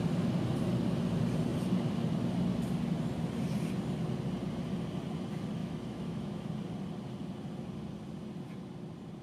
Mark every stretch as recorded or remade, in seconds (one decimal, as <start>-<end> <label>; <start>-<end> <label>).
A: 0.0-5.6 recorded; 5.6-6.5 remade; 6.5-9.2 recorded